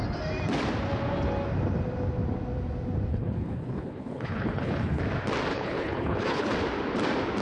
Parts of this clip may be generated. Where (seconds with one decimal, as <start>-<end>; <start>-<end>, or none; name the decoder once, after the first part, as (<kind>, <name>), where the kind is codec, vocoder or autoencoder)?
3.1-5.0 (codec, HILCodec); 5.5-6.5